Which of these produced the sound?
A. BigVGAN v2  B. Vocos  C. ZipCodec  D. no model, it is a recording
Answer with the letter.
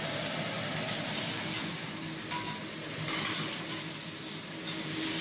D